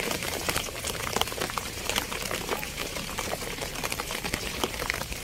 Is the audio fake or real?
fake